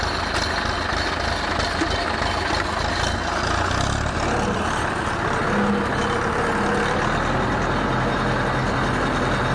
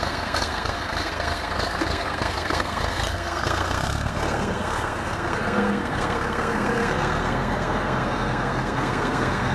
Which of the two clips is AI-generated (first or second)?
second